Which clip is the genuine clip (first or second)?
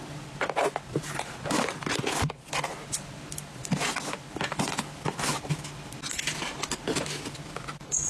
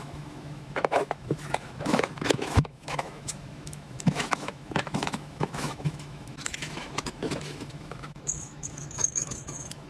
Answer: first